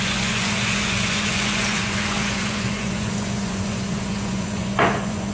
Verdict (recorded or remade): remade